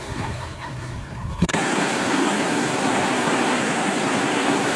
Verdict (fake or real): fake